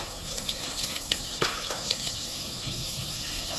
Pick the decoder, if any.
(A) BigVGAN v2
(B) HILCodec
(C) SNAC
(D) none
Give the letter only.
C